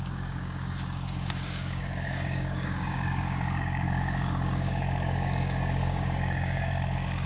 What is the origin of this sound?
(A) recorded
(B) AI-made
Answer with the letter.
B